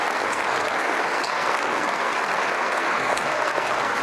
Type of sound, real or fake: fake